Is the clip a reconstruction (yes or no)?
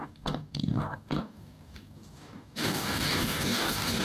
yes